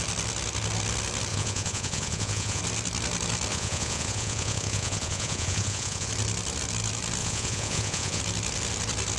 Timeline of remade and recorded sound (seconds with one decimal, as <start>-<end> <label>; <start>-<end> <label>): 0.0-1.3 recorded; 1.3-2.6 remade; 2.6-3.5 recorded; 3.5-6.1 remade; 6.1-7.2 recorded; 7.2-8.2 remade; 8.2-9.2 recorded